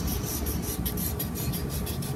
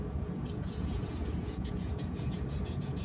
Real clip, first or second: first